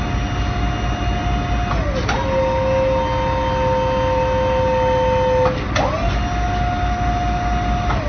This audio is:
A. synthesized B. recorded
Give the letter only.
B